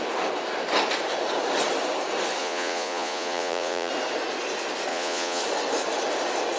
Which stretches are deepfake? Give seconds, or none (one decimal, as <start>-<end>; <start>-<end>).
2.4-3.9; 4.9-5.4